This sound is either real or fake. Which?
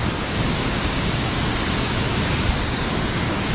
fake